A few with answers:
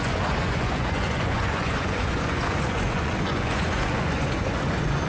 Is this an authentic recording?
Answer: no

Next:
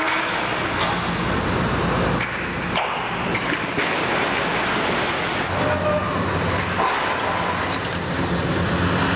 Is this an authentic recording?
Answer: yes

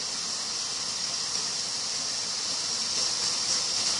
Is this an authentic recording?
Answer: yes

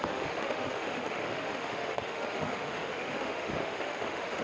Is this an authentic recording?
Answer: no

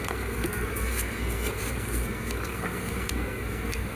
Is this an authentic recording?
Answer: no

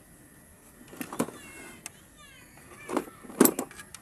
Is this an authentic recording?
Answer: yes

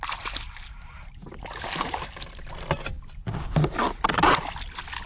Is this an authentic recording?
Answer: yes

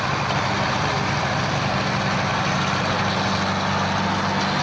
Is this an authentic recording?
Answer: yes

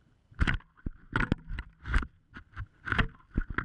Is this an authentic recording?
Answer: yes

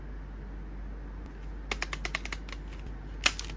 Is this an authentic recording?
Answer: yes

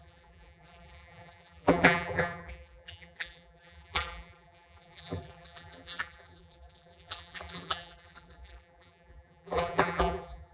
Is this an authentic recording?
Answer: no